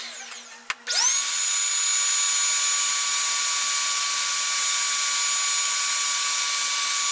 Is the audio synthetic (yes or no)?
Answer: no